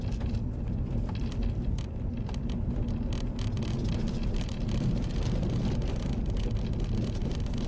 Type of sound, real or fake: real